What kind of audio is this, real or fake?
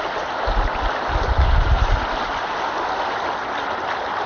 real